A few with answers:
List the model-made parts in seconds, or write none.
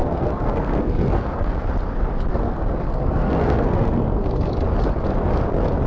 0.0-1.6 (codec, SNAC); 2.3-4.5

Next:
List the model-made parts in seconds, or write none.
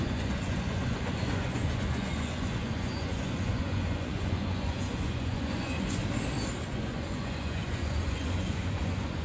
0.0-6.0 (vocoder, Vocos); 6.7-9.2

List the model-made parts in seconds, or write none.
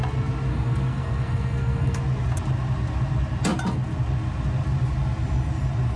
0.5-2.0 (codec, SNAC)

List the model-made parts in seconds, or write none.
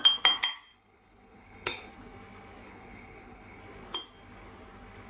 0.7-1.9 (codec, HILCodec); 2.6-3.6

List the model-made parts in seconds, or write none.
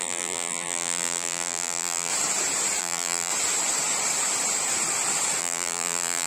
0.0-2.1 (vocoder, BigVGAN v2); 2.8-3.3; 5.4-6.3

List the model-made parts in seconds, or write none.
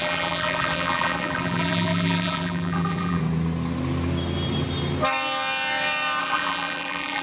0.0-3.2 (vocoder, BigVGAN v2); 6.2-7.2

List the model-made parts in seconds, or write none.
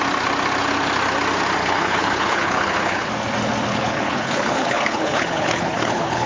1.6-3.1 (codec, HILCodec); 3.7-6.3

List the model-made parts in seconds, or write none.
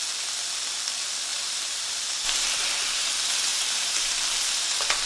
1.3-3.1 (vocoder, BigVGAN v2); 3.5-4.1